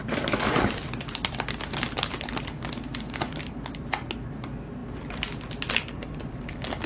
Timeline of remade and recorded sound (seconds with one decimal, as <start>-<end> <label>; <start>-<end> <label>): 0.0-6.9 recorded